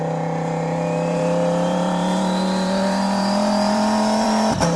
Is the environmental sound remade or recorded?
remade